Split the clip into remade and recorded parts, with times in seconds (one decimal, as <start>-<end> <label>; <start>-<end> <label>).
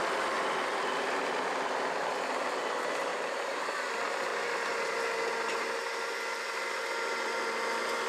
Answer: 0.0-3.1 recorded; 3.1-3.6 remade; 3.6-8.1 recorded